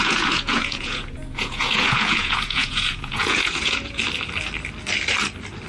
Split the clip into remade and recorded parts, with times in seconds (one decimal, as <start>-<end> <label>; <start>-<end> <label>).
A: 0.0-4.0 remade; 4.0-5.7 recorded